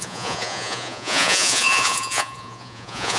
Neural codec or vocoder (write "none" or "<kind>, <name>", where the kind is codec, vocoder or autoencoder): vocoder, Vocos